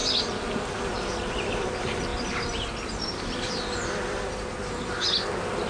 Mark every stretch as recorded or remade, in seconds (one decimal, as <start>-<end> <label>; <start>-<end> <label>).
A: 0.0-5.7 recorded